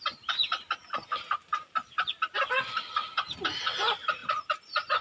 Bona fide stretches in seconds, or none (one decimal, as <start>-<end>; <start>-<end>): 0.0-5.0